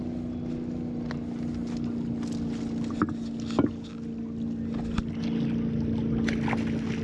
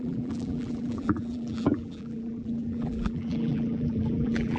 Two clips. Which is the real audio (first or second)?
first